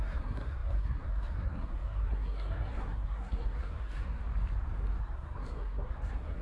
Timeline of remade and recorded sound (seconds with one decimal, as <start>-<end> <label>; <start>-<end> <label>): 0.0-4.2 remade; 4.2-5.0 recorded; 5.0-6.4 remade